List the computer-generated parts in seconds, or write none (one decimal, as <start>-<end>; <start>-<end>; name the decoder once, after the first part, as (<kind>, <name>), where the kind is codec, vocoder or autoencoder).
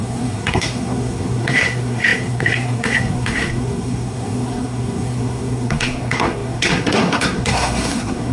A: 0.0-8.3 (codec, SNAC)